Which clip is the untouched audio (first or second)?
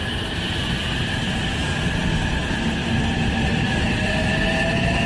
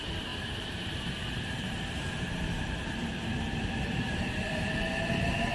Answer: first